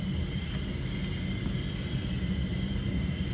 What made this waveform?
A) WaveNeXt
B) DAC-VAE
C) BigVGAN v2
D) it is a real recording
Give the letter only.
D